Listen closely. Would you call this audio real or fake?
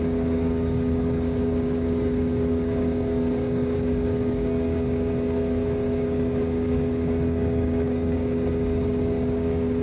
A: fake